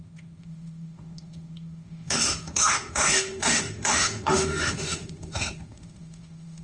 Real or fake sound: fake